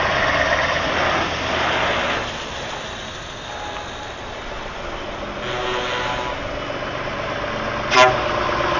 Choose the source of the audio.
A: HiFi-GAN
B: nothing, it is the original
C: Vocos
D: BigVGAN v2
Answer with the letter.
B